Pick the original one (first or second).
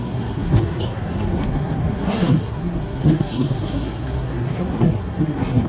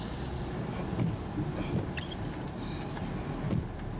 second